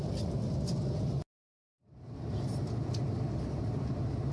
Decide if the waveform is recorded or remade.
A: recorded